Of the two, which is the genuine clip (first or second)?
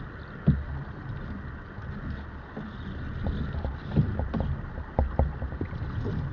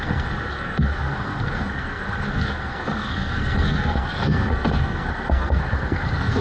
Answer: first